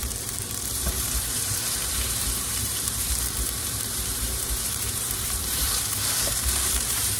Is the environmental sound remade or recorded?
remade